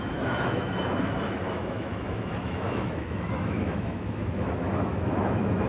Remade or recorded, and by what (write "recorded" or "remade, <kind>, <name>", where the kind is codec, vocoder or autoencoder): remade, autoencoder, DAC-VAE